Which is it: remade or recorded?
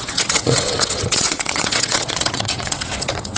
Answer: remade